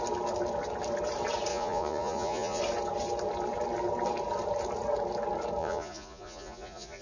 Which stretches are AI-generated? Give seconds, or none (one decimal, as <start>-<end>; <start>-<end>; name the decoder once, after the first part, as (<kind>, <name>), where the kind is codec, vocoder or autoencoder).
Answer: 1.5-2.6 (vocoder, Vocos); 5.6-7.0